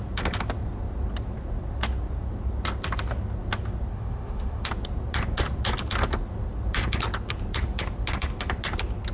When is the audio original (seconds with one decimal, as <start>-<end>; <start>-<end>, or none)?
0.0-3.9; 4.7-9.1